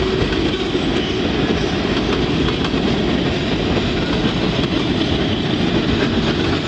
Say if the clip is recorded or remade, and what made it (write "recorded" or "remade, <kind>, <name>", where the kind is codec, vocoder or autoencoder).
recorded